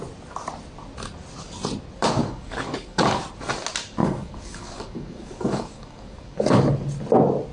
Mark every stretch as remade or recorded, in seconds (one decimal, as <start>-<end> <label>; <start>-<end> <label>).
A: 0.0-2.2 recorded; 2.2-3.2 remade; 3.2-4.0 recorded; 4.0-6.6 remade; 6.6-7.5 recorded